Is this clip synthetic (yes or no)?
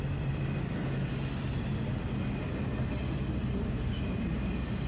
no